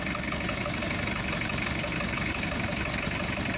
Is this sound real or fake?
real